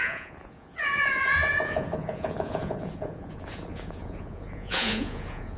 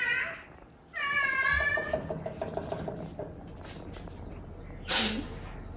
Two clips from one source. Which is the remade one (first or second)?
first